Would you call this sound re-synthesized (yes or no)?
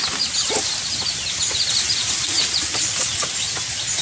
no